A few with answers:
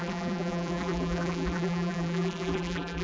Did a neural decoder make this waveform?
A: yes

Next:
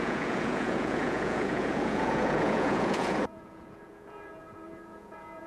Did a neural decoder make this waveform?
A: yes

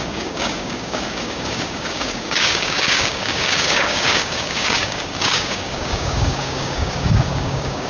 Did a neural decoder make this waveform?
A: yes